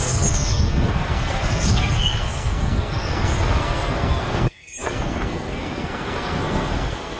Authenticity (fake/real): fake